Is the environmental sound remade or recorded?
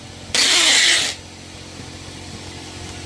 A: recorded